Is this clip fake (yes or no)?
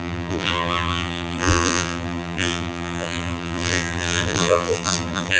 yes